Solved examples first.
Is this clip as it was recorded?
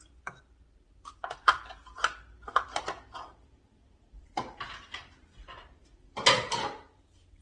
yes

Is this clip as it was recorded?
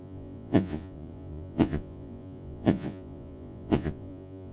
no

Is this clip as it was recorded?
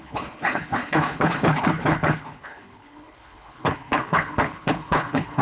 no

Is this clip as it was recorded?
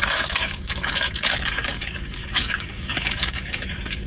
no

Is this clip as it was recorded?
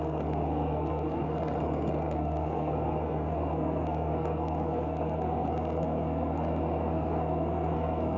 no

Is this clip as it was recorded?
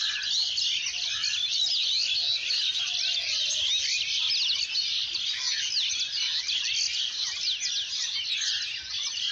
yes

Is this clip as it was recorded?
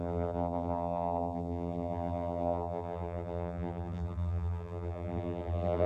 no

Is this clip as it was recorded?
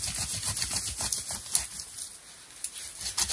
yes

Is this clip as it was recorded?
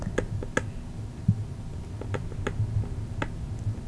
yes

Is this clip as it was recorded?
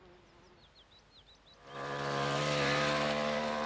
yes